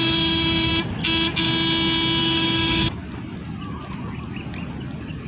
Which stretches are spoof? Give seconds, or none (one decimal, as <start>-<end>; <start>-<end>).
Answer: 0.0-0.7; 2.2-3.0